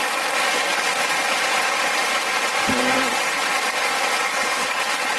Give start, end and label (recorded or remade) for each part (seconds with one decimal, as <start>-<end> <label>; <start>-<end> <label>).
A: 0.0-4.3 recorded; 4.3-4.8 remade; 4.8-5.2 recorded